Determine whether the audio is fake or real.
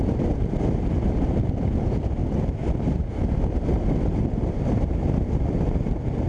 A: real